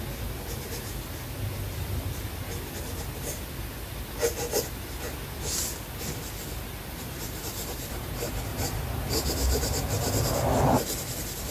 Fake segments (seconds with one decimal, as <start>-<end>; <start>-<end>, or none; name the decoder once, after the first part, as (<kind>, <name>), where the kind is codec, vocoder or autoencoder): 8.5-10.6 (vocoder, BigVGAN v2)